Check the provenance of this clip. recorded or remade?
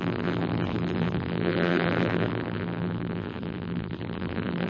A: remade